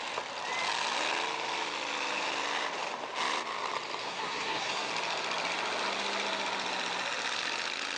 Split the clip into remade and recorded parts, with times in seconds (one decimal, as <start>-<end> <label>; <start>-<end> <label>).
0.0-4.0 recorded; 4.0-4.9 remade; 4.9-8.0 recorded

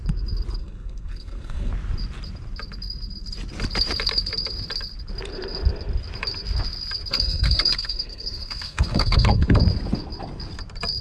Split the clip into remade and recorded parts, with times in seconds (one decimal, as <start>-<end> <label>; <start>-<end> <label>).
0.0-0.6 recorded; 0.6-1.7 remade; 1.7-7.1 recorded; 7.1-9.6 remade; 9.6-11.0 recorded

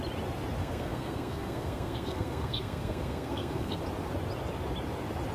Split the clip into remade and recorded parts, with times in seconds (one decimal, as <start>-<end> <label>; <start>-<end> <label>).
0.0-0.6 recorded; 0.6-3.8 remade; 3.8-5.3 recorded

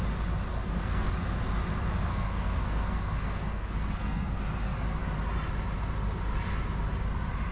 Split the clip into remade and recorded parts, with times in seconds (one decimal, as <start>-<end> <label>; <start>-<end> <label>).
0.0-0.5 recorded; 0.5-1.1 remade; 1.1-2.1 recorded; 2.1-4.4 remade; 4.4-7.5 recorded